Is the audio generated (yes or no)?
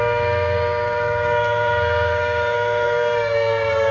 yes